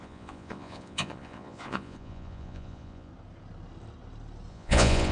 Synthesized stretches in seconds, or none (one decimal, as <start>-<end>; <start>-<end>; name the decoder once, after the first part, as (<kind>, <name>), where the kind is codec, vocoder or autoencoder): 0.0-3.1 (vocoder, Vocos); 4.5-5.1